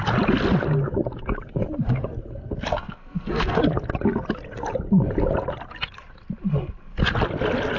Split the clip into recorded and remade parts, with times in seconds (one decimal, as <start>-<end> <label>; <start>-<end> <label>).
0.0-2.7 recorded; 2.7-3.6 remade; 3.6-7.8 recorded